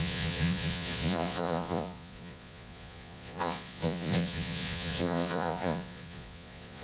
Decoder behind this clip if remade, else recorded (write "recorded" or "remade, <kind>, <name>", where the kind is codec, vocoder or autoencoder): remade, vocoder, Vocos